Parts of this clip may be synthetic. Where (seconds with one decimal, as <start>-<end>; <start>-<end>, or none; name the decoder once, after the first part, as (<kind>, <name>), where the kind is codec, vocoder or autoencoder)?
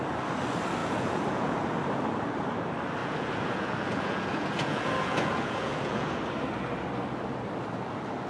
0.8-1.7 (vocoder, Vocos); 3.0-6.2